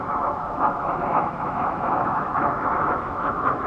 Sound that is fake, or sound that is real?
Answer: fake